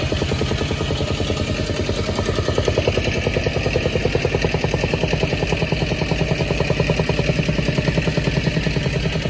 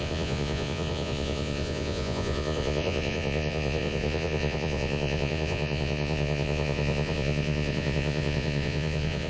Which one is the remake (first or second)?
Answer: second